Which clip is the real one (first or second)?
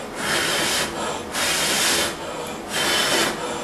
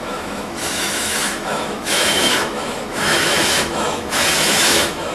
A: first